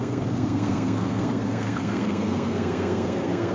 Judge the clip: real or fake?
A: fake